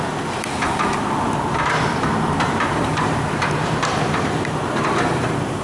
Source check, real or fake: fake